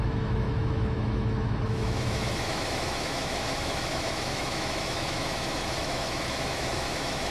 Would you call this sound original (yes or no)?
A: no